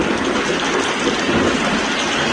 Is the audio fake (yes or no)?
no